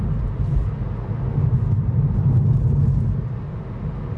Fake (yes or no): no